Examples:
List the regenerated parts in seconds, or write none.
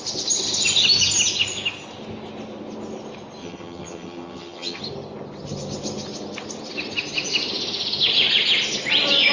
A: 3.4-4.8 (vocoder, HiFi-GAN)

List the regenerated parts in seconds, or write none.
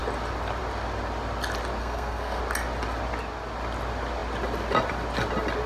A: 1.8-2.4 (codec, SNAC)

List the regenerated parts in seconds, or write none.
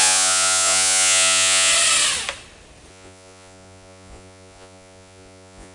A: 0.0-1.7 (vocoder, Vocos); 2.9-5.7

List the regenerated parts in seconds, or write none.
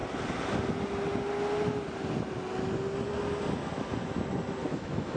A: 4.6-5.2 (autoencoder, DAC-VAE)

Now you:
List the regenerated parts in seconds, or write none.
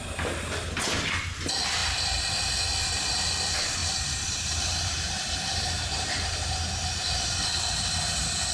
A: 3.8-6.4 (vocoder, BigVGAN v2)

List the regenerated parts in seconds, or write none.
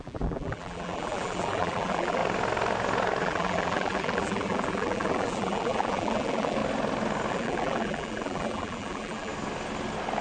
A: 0.0-2.2 (vocoder, BigVGAN v2); 3.2-6.6; 7.3-9.3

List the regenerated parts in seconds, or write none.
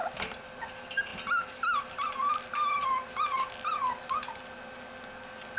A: none